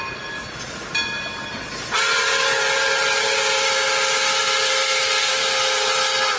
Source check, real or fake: real